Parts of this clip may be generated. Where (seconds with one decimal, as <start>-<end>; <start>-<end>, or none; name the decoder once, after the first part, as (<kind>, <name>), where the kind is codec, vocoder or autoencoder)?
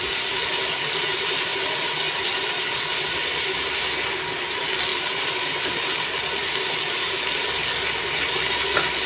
none